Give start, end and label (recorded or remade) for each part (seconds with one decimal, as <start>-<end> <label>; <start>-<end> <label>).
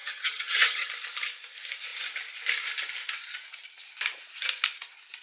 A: 0.0-0.9 remade; 0.9-5.2 recorded